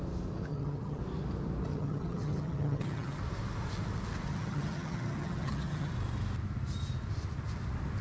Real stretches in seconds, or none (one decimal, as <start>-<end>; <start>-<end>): 0.0-0.5; 1.0-1.7; 3.2-4.3; 5.9-8.0